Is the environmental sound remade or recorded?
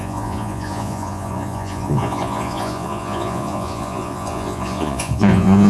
remade